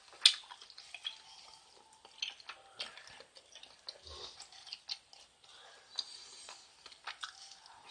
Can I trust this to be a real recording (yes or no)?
yes